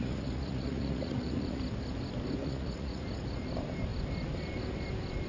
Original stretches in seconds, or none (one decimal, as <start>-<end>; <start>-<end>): 1.6-2.4; 3.0-5.3